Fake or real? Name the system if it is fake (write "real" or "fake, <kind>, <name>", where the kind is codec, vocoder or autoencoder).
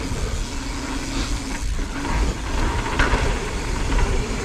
real